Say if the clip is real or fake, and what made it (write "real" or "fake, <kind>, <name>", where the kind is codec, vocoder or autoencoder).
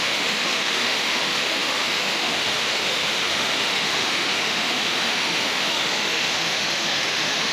fake, autoencoder, DAC-VAE